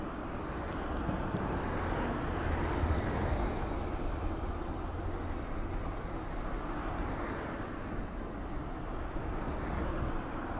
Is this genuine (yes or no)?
yes